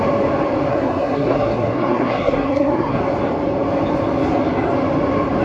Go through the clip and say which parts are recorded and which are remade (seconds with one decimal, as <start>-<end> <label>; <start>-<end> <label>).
0.0-0.7 recorded; 0.7-3.0 remade; 3.0-5.4 recorded